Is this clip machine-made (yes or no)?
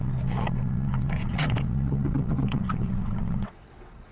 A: yes